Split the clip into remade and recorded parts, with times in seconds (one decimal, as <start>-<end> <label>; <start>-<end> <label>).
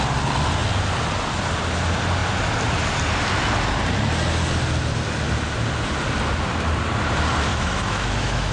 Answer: 0.0-7.5 recorded; 7.5-8.5 remade